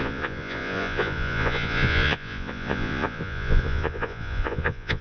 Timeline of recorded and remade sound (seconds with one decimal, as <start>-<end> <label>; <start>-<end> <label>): 0.0-5.0 remade